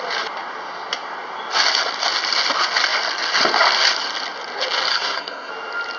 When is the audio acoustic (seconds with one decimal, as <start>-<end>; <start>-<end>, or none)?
0.0-4.9; 5.5-6.0